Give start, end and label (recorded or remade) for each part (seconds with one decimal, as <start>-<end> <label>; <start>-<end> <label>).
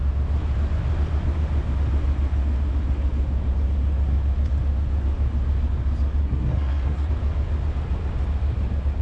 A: 0.0-6.2 recorded; 6.2-7.1 remade; 7.1-9.0 recorded